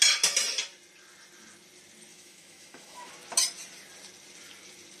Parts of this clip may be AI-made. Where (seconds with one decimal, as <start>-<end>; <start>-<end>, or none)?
2.1-3.1